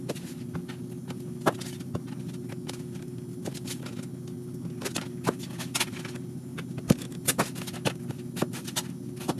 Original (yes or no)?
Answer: yes